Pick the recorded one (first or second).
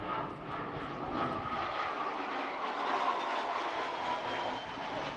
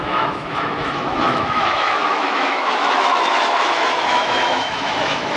first